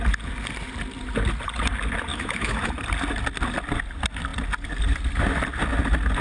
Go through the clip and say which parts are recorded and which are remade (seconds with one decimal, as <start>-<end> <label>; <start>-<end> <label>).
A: 0.0-2.1 recorded; 2.1-2.7 remade; 2.7-6.2 recorded